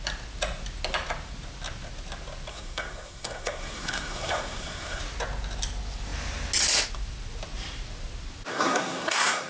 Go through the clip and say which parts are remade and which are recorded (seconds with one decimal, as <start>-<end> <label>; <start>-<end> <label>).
0.0-2.5 recorded; 2.5-5.0 remade; 5.0-8.5 recorded; 8.5-9.5 remade